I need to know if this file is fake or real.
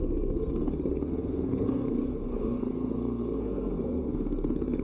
fake